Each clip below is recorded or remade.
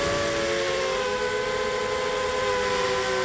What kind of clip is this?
recorded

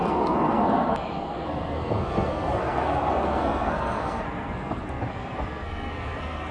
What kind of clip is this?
remade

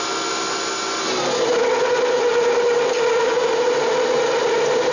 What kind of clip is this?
recorded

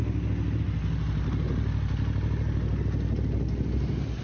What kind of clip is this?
recorded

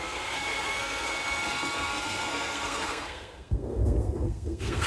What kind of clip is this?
remade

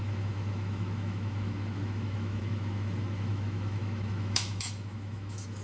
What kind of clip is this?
remade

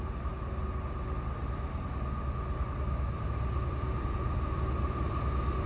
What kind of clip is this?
recorded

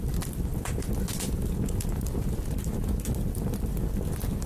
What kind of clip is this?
remade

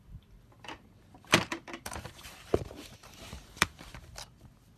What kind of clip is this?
remade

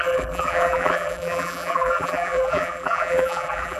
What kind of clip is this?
remade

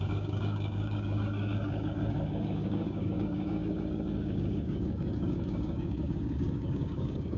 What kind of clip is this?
remade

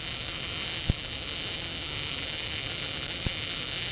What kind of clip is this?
recorded